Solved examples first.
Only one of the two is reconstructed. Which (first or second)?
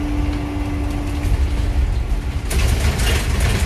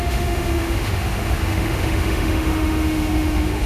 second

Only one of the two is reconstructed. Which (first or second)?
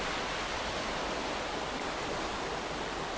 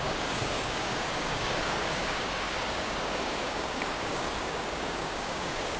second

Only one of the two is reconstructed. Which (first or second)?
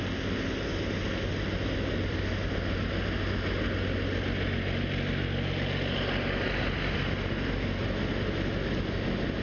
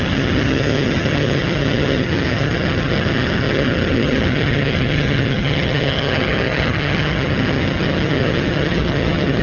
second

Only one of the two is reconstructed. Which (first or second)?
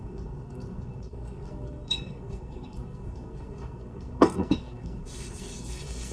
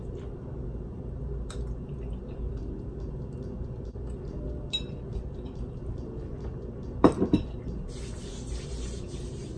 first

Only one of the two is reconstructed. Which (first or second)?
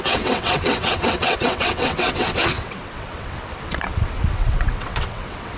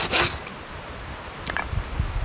first